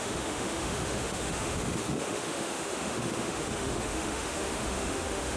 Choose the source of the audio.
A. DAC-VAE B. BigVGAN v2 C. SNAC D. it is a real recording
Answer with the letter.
A